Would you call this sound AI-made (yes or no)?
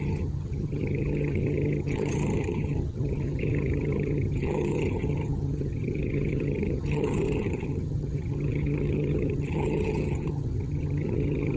yes